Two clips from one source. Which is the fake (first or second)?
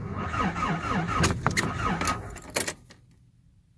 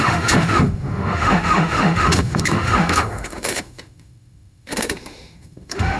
second